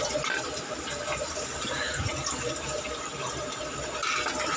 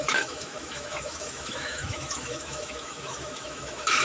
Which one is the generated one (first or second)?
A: second